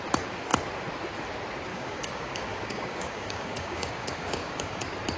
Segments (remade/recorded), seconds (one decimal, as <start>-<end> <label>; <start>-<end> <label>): 0.0-1.7 recorded; 1.7-4.8 remade; 4.8-5.2 recorded